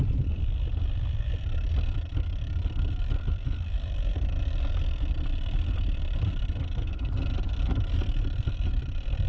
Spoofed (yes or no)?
no